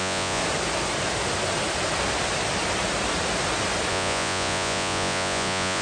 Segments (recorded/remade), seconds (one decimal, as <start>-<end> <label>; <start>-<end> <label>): 0.0-0.4 remade; 0.4-3.9 recorded; 3.9-5.8 remade